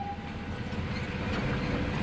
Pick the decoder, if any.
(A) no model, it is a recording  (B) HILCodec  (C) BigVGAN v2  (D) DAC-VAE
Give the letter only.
A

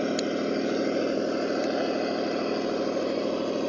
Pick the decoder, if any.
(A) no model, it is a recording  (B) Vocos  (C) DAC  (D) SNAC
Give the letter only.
A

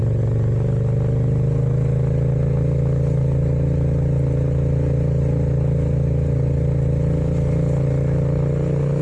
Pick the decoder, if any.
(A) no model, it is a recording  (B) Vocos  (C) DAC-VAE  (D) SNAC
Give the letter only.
A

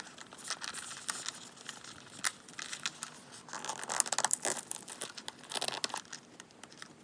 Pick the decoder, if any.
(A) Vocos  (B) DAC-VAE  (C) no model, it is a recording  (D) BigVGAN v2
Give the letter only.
C